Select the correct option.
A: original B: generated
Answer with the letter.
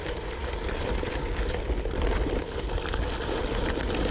B